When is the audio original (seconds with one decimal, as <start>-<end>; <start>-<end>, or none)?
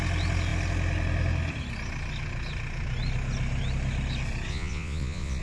0.0-4.5